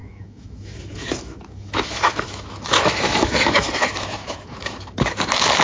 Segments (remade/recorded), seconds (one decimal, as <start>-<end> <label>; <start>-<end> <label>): 0.0-5.6 remade